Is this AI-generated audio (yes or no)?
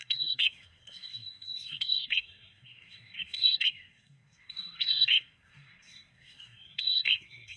yes